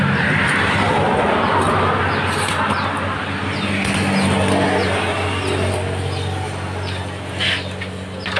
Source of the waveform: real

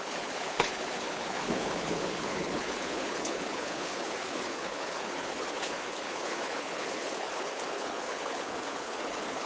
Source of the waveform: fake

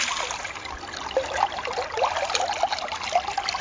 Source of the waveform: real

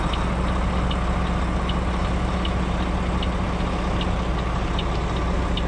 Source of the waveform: real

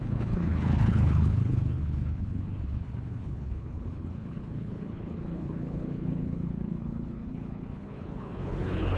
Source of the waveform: fake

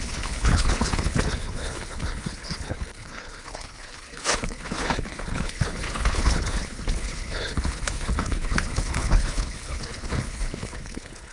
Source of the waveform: fake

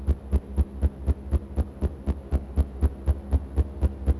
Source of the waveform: real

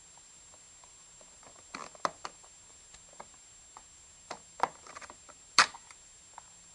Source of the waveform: real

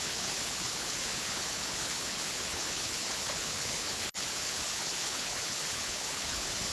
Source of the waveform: fake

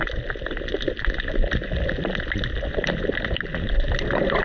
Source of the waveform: real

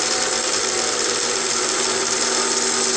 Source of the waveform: real